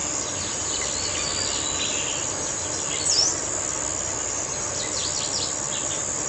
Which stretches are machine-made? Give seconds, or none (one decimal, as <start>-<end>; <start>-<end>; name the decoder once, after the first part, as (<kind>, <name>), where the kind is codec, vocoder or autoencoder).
none